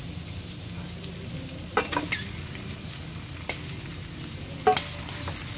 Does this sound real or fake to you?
real